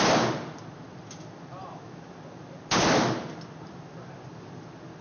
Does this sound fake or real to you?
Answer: real